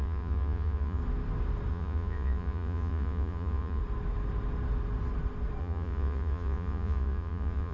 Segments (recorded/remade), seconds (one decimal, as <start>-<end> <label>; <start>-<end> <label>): 0.0-1.0 remade; 1.0-1.7 recorded; 1.7-3.8 remade; 3.8-5.6 recorded; 5.6-7.7 remade

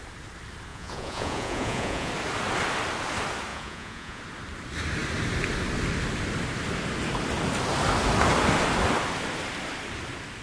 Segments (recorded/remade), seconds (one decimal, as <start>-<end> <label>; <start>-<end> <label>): 0.0-0.7 recorded; 0.7-2.1 remade; 2.1-3.5 recorded; 3.5-4.2 remade; 4.2-10.4 recorded

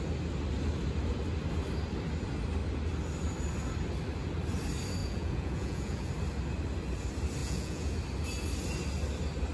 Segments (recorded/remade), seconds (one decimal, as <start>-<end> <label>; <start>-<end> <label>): 0.0-5.0 recorded; 5.0-6.1 remade; 6.1-7.4 recorded; 7.4-7.9 remade; 7.9-9.5 recorded

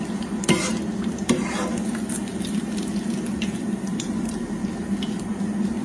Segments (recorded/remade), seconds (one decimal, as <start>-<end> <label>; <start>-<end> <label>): 0.0-5.8 recorded

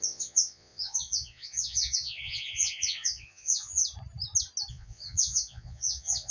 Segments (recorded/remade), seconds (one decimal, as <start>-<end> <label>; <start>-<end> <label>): 0.0-3.8 remade; 3.8-4.7 recorded; 4.7-6.3 remade

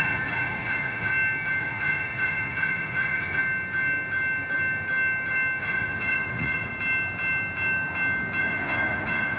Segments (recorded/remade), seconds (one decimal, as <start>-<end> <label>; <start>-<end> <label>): 0.0-1.1 remade; 1.1-1.6 recorded; 1.6-3.4 remade; 3.4-5.6 recorded; 5.6-6.7 remade; 6.7-8.4 recorded; 8.4-9.4 remade

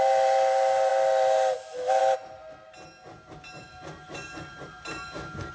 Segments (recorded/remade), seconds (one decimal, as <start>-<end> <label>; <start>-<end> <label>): 0.0-5.5 recorded